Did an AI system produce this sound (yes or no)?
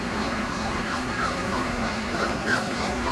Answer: yes